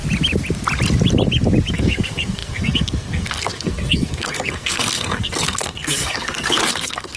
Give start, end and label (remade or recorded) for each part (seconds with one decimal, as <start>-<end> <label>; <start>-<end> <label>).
0.0-1.7 recorded; 1.7-7.2 remade